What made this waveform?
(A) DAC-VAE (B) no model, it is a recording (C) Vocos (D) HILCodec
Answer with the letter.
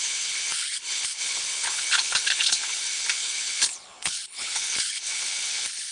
D